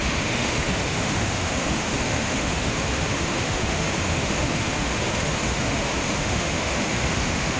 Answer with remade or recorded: remade